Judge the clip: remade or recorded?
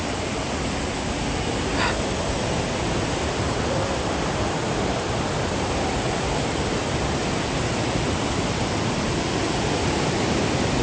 recorded